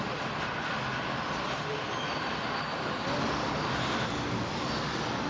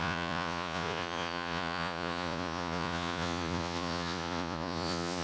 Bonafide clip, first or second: first